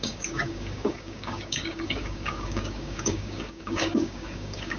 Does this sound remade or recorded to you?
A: remade